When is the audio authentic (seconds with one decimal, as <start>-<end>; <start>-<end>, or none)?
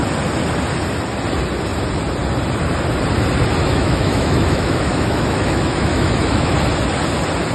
0.0-3.6; 6.6-7.5